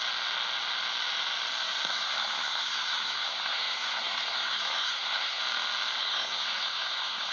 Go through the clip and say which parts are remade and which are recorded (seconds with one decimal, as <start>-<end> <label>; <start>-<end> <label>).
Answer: 0.0-1.9 recorded; 1.9-5.4 remade; 5.4-6.0 recorded; 6.0-7.3 remade